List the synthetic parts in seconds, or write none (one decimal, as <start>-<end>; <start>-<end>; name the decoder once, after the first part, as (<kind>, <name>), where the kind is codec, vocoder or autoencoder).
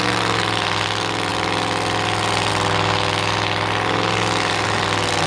none